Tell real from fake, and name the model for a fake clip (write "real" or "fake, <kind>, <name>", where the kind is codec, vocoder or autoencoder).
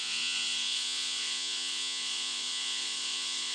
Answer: fake, vocoder, Vocos